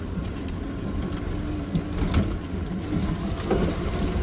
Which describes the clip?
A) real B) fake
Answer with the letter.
A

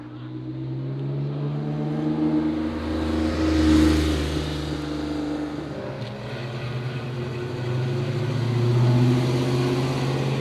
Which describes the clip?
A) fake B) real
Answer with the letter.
B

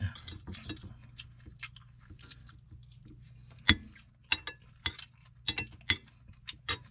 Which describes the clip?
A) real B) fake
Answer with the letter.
A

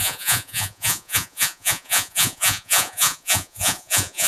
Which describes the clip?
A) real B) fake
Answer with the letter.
B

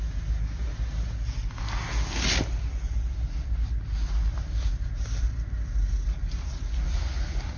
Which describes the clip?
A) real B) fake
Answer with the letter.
A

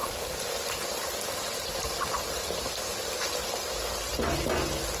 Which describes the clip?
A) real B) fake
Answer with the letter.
A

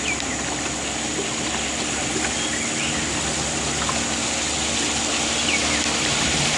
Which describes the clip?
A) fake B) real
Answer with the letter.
B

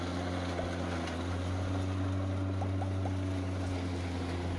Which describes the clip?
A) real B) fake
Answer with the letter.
A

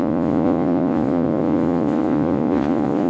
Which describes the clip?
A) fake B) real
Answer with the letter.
A